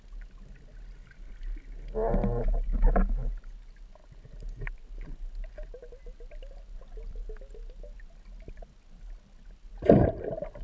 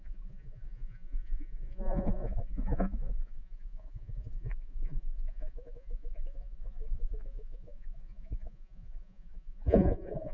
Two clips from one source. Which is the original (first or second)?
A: first